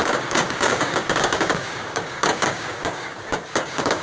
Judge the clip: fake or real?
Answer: fake